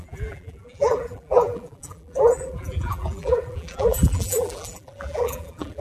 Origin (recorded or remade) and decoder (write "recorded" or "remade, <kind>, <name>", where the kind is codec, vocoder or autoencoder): remade, vocoder, BigVGAN v2